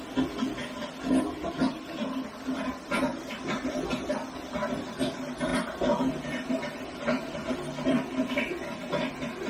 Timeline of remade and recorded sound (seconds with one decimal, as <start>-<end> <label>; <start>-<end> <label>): 0.0-3.1 recorded; 3.1-4.1 remade; 4.1-9.5 recorded